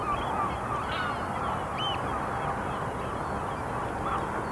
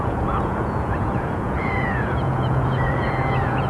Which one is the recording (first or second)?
first